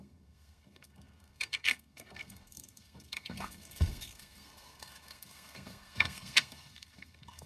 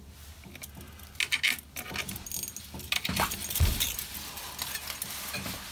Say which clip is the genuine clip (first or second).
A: second